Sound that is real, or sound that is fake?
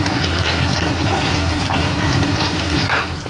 fake